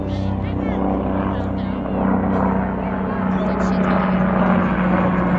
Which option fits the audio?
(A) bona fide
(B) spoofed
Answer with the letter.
A